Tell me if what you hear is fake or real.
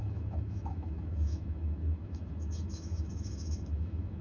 fake